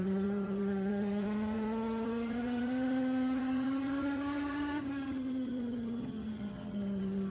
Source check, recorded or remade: remade